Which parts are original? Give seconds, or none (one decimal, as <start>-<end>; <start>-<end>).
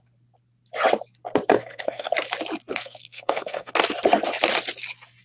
0.0-1.5; 2.1-2.7; 3.7-5.2